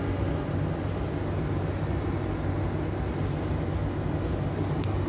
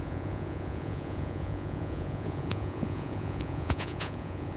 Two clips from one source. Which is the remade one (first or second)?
second